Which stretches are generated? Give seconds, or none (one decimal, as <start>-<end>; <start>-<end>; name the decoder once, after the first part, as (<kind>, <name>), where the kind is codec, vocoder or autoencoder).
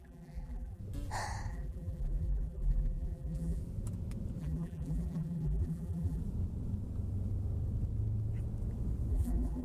0.0-0.8 (vocoder, BigVGAN v2); 1.5-3.6; 4.4-6.2; 9.1-9.6